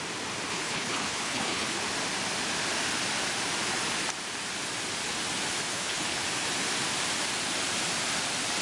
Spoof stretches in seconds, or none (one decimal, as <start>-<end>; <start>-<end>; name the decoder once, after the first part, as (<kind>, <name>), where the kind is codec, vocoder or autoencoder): 0.5-1.8 (codec, HILCodec); 5.7-6.2